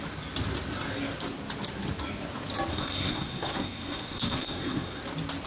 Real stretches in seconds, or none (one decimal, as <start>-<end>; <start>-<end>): 0.0-2.7; 5.0-5.5